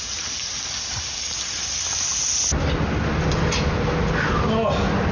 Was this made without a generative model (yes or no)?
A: yes